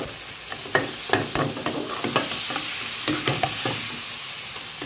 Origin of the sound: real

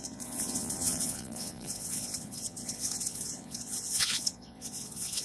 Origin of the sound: fake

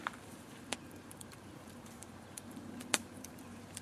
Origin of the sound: fake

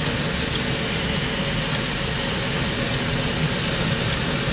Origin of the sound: real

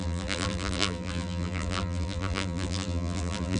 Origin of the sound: fake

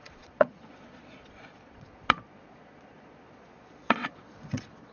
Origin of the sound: fake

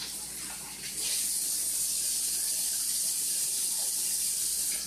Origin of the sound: real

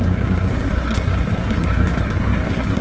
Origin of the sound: fake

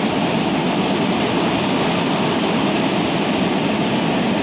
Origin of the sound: real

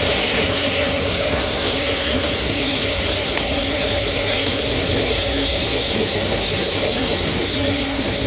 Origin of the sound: fake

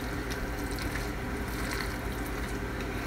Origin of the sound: real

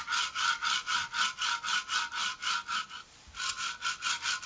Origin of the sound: real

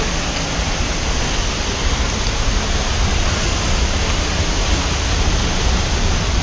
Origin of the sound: real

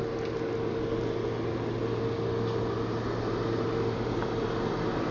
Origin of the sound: real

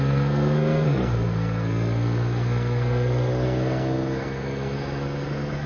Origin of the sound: fake